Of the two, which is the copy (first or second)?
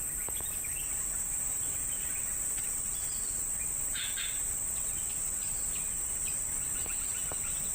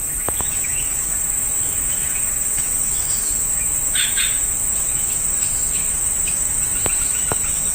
second